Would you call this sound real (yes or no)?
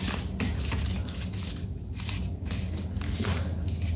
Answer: yes